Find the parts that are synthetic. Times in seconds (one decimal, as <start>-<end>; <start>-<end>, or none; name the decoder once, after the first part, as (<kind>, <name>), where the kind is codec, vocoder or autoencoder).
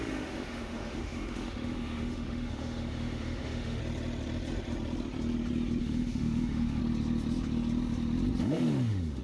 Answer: 0.0-3.8 (autoencoder, DAC-VAE); 5.8-6.8; 8.4-9.2